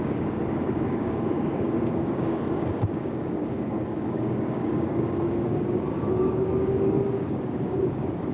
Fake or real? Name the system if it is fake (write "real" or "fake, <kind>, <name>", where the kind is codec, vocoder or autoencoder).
fake, codec, DAC